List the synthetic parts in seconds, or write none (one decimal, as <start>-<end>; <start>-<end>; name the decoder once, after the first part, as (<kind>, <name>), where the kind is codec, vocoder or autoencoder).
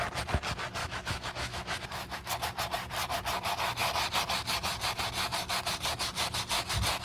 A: 0.8-2.3 (autoencoder, DAC-VAE)